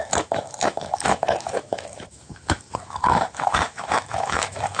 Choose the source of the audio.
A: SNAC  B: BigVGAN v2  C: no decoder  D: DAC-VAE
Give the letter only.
D